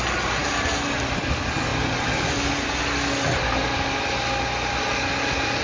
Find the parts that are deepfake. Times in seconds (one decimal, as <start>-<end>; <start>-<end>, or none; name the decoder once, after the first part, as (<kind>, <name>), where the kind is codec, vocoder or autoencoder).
none